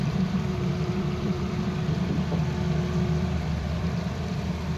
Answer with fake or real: fake